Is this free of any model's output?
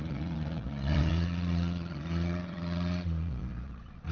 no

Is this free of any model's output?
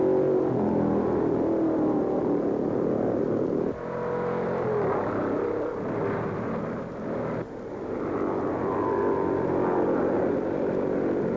yes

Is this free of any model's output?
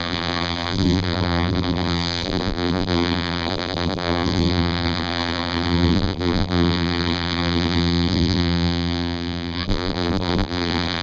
no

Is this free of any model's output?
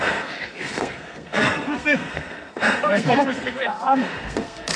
no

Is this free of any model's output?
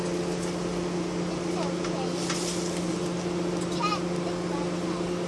yes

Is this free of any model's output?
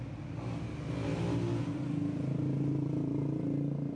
yes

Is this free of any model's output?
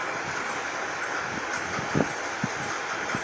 yes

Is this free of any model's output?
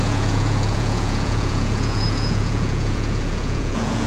no